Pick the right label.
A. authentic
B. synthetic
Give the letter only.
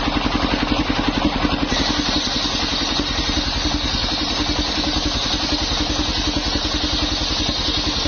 A